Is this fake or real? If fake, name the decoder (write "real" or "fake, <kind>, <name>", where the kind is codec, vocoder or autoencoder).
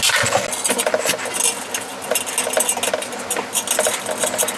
real